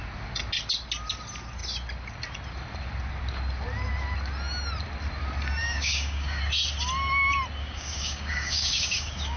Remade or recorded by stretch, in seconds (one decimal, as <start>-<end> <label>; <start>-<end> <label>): 0.0-5.6 recorded; 5.6-6.4 remade; 6.4-7.6 recorded; 7.6-9.4 remade